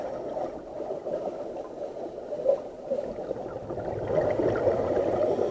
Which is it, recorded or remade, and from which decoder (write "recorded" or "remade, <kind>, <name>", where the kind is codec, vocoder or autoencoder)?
recorded